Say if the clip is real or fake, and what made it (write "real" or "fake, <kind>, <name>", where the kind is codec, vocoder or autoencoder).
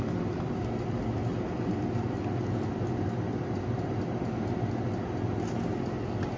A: real